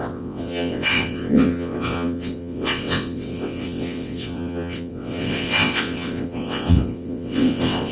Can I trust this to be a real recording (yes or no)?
no